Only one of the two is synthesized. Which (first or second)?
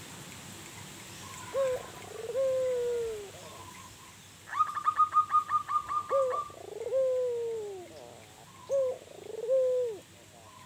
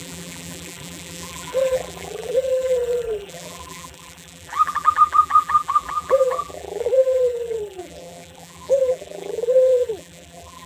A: second